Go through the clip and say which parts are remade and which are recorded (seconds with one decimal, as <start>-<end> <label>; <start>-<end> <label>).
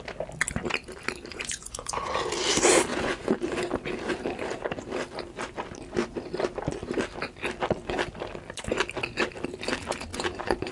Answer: 0.0-1.3 recorded; 1.3-2.1 remade; 2.1-2.9 recorded; 2.9-3.5 remade; 3.5-10.1 recorded; 10.1-10.7 remade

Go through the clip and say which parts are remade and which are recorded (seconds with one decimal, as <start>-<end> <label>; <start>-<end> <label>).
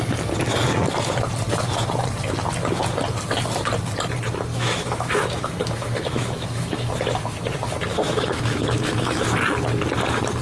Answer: 0.0-4.5 recorded; 4.5-6.9 remade; 6.9-7.9 recorded; 7.9-9.2 remade; 9.2-10.4 recorded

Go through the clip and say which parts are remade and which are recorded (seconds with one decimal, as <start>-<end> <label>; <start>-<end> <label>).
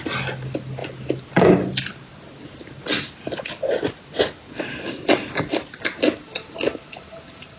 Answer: 0.0-7.6 recorded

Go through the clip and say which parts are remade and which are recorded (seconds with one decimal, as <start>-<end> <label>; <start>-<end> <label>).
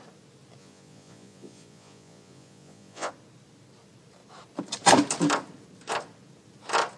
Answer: 0.0-0.6 recorded; 0.6-3.1 remade; 3.1-7.0 recorded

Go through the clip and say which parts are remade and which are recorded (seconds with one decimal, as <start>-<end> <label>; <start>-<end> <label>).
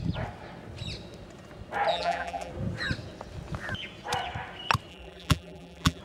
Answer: 0.0-1.9 recorded; 1.9-2.5 remade; 2.5-4.9 recorded; 4.9-6.0 remade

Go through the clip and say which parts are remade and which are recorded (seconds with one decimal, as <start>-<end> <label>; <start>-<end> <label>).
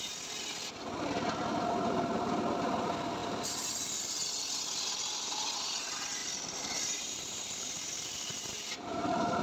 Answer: 0.0-3.2 recorded; 3.2-4.1 remade; 4.1-6.2 recorded; 6.2-9.4 remade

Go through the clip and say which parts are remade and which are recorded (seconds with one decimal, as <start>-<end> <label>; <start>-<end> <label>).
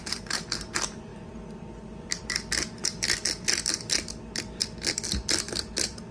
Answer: 0.0-6.1 recorded